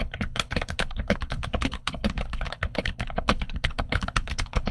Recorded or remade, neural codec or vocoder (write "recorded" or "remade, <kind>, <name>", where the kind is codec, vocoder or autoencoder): remade, codec, HILCodec